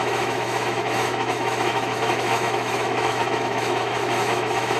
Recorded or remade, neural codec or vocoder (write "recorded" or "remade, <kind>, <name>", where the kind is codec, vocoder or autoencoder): remade, autoencoder, DAC-VAE